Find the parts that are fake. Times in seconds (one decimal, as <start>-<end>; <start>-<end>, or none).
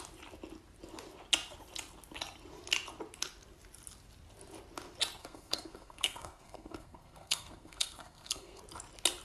5.2-8.6